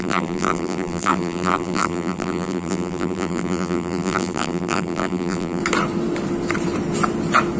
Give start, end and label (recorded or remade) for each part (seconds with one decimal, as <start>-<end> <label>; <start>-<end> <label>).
0.0-5.6 remade; 5.6-7.6 recorded